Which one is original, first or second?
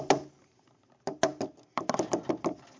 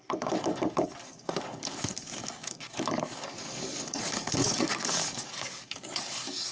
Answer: first